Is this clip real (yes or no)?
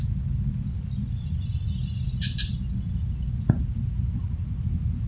yes